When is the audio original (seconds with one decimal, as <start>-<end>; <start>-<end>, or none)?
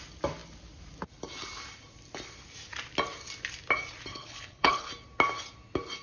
0.0-4.1; 4.9-6.0